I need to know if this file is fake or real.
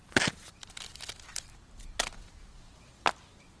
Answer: real